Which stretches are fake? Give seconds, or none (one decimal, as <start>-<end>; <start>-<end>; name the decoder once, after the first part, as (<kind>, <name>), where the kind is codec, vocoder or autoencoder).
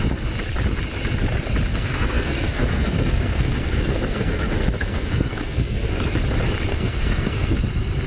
1.7-5.9 (codec, SNAC); 6.7-7.6